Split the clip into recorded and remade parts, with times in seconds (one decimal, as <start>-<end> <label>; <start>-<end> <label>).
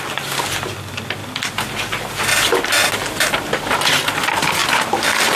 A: 0.0-5.4 recorded